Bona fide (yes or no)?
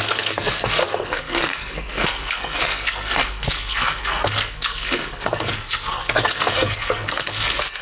no